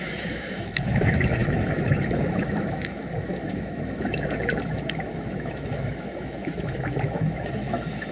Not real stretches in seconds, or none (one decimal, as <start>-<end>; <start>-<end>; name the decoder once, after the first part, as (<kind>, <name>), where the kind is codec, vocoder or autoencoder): 0.0-8.1 (autoencoder, DAC-VAE)